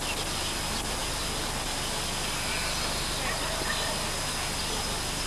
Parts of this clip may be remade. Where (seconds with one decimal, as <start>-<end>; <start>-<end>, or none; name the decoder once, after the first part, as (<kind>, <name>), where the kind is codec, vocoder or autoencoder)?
none